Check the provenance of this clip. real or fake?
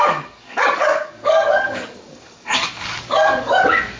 fake